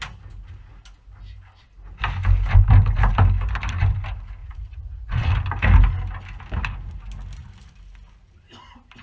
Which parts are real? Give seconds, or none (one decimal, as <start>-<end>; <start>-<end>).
0.0-4.4; 5.3-9.0